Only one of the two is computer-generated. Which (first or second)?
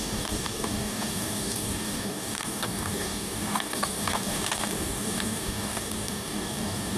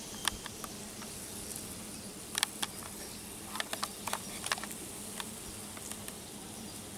first